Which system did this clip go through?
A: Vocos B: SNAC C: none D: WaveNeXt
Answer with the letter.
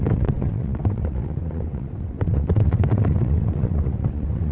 D